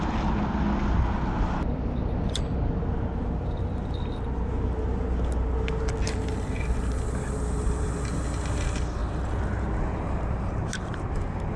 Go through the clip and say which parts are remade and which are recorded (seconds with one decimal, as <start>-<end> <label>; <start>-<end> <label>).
0.0-9.0 recorded; 9.0-11.1 remade; 11.1-11.6 recorded